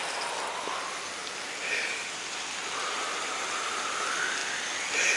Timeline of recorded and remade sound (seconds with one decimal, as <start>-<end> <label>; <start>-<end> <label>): 0.0-5.2 recorded